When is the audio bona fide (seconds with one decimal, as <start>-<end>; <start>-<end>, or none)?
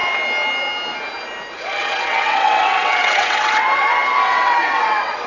0.0-1.8